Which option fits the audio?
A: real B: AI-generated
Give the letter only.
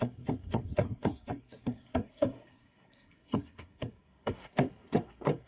B